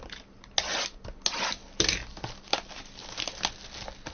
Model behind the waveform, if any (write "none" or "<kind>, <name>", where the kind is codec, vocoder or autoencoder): none